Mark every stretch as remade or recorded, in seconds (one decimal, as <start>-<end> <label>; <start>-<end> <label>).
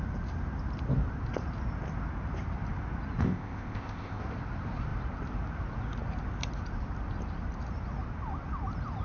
0.0-3.2 recorded; 3.2-4.2 remade; 4.2-9.0 recorded